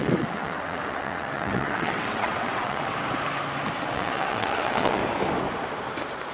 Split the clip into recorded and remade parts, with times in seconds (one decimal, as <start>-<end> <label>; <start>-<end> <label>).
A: 0.0-2.9 remade; 2.9-3.8 recorded; 3.8-5.0 remade; 5.0-6.3 recorded